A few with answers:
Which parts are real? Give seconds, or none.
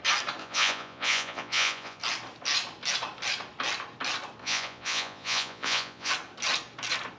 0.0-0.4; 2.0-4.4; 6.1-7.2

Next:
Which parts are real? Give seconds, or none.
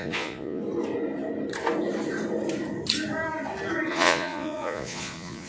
0.6-3.9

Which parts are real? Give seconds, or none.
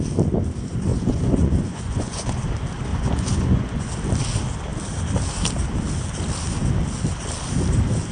0.0-0.9; 2.4-2.9; 3.9-8.1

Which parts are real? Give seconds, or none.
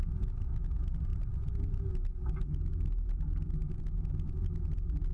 0.0-5.1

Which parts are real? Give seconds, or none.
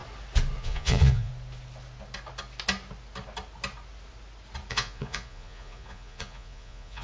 0.0-0.6; 1.3-4.7